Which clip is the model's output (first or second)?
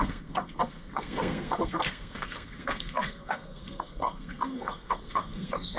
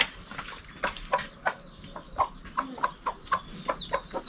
first